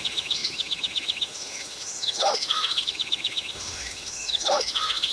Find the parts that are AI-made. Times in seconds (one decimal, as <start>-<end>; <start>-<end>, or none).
0.0-5.1